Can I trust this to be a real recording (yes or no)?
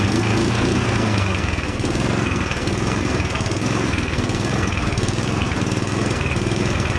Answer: no